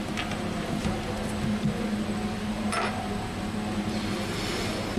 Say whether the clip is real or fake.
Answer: real